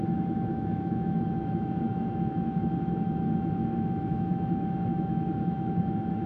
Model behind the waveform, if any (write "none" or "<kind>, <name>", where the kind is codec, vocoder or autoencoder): autoencoder, DAC-VAE